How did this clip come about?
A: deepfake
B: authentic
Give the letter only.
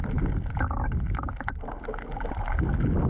B